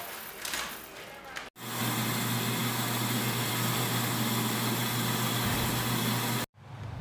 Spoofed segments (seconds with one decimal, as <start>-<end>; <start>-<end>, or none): none